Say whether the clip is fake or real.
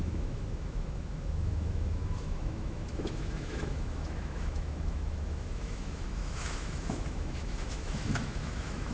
fake